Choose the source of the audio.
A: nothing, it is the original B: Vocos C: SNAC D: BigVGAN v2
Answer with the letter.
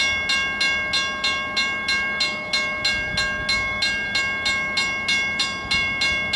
A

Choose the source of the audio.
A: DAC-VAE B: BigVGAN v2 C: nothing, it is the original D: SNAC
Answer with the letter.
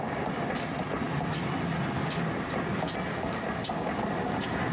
C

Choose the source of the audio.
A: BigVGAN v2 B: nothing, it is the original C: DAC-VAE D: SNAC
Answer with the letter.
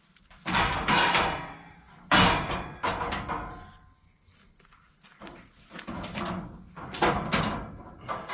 B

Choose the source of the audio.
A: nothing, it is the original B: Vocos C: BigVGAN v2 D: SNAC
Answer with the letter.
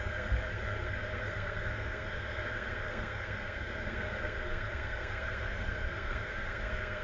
D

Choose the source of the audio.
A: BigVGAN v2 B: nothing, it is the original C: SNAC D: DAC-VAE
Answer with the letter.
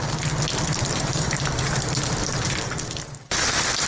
B